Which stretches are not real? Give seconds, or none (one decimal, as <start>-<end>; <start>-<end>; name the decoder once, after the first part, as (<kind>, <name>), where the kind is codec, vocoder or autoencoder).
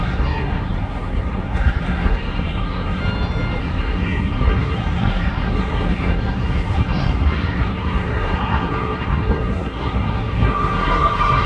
0.0-3.0 (codec, SNAC); 3.6-11.5